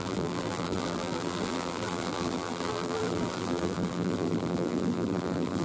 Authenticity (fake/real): fake